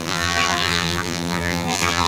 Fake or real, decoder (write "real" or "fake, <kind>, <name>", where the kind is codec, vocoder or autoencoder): fake, vocoder, BigVGAN v2